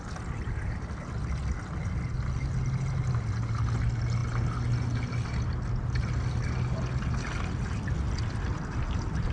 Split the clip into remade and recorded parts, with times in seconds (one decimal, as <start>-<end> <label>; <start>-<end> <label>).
0.0-9.3 recorded

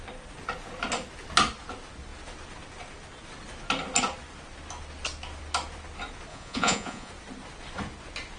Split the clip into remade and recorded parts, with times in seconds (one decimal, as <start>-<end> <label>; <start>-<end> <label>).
0.0-6.3 recorded; 6.3-7.1 remade; 7.1-8.4 recorded

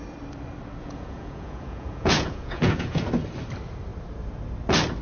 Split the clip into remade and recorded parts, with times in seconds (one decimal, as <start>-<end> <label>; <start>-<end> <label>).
0.0-0.8 recorded; 0.8-3.1 remade; 3.1-5.0 recorded

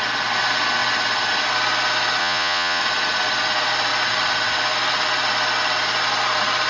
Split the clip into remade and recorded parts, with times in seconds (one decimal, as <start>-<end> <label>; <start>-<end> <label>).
0.0-2.2 recorded; 2.2-2.8 remade; 2.8-6.7 recorded

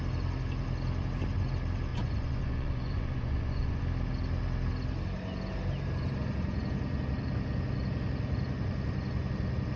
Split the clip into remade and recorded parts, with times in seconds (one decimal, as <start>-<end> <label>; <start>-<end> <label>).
0.0-1.9 recorded; 1.9-3.8 remade; 3.8-9.8 recorded